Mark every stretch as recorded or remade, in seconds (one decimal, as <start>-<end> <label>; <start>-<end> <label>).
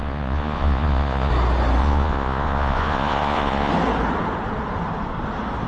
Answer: 0.0-1.3 remade; 1.3-1.8 recorded; 1.8-3.7 remade; 3.7-5.7 recorded